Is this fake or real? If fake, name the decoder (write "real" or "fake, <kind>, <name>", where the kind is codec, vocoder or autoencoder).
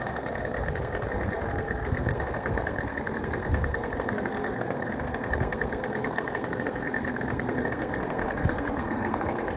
fake, codec, SNAC